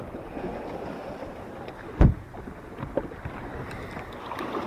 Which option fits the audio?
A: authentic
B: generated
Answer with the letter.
A